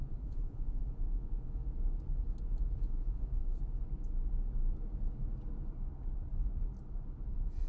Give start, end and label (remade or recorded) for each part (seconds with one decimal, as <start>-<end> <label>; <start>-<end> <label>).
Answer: 0.0-1.6 remade; 1.6-2.4 recorded; 2.4-3.4 remade; 3.4-7.2 recorded; 7.2-7.7 remade